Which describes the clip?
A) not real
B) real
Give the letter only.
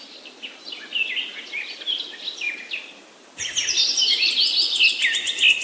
B